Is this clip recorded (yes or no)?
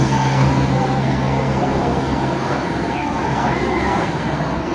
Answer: no